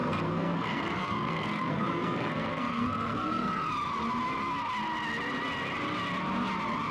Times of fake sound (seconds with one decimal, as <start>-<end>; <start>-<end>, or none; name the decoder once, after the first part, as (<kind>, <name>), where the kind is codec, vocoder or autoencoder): 0.0-3.7 (codec, SNAC)